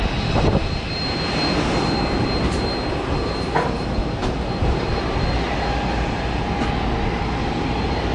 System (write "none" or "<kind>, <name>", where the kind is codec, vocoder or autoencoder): none